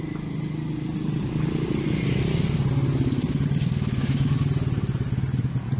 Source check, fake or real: real